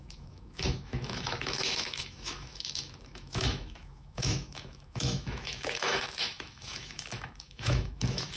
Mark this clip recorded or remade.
remade